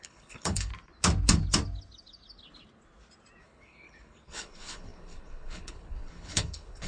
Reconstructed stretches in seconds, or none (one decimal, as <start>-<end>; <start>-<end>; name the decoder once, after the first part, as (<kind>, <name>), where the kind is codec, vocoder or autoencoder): 0.0-0.7 (codec, HILCodec); 3.4-6.9